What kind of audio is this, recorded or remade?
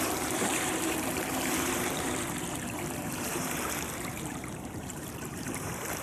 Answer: remade